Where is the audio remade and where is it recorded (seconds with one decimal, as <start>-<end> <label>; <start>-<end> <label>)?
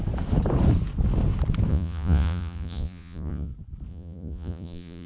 0.0-1.7 recorded; 1.7-3.5 remade; 3.5-3.9 recorded; 3.9-5.1 remade